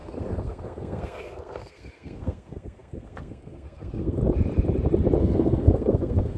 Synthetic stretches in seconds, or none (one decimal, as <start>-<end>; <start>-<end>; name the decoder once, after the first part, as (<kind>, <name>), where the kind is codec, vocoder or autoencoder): 0.0-4.2 (codec, SNAC); 5.2-6.4